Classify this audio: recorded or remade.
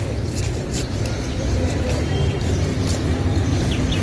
remade